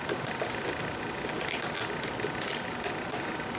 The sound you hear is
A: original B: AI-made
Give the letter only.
A